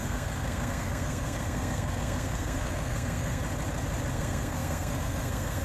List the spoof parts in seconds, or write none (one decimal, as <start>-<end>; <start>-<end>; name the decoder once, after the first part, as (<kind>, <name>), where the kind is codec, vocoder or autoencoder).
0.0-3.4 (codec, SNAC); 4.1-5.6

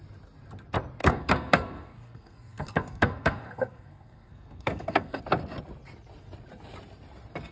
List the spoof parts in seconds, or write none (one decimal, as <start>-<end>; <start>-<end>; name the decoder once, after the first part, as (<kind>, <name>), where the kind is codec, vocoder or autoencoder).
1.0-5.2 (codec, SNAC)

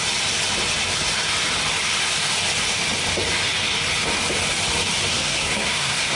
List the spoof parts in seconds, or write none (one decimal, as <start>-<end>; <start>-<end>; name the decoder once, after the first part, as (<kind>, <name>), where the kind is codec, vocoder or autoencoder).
5.1-6.2 (codec, SNAC)

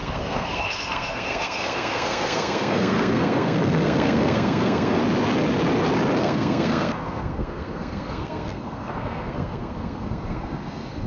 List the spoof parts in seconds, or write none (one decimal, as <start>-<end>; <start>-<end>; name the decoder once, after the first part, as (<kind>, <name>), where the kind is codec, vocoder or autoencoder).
0.0-5.0 (codec, SNAC); 6.2-11.1

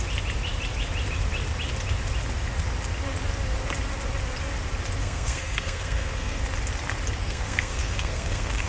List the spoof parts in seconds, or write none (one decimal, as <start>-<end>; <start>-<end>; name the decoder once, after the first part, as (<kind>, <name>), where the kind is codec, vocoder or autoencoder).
5.0-6.4 (codec, SNAC); 7.2-8.7

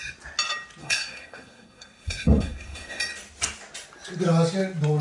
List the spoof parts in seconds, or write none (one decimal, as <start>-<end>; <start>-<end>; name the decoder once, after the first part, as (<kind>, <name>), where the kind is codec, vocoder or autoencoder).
0.8-3.0 (codec, SNAC)